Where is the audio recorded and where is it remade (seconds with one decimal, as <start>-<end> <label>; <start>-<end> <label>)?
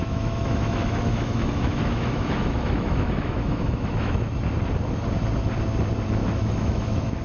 0.0-4.3 remade; 4.3-6.2 recorded; 6.2-7.2 remade